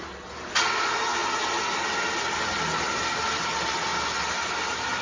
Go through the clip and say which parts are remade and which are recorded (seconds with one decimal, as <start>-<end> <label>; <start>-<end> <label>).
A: 0.0-5.0 recorded

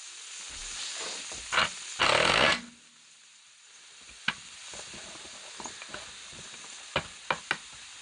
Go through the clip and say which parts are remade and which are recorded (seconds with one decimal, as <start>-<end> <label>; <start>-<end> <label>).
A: 0.0-8.0 recorded

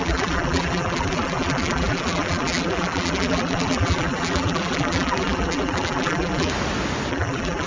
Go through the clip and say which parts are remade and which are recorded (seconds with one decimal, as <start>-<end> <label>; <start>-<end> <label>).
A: 0.0-6.5 remade; 6.5-7.1 recorded; 7.1-7.7 remade

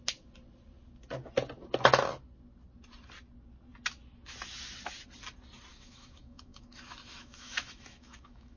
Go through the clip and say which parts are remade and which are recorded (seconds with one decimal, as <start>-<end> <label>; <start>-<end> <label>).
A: 0.0-5.7 recorded; 5.7-8.6 remade

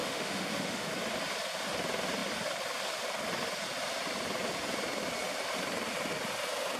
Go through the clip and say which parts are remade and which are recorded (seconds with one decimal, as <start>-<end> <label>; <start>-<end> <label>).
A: 0.0-0.9 remade; 0.9-6.8 recorded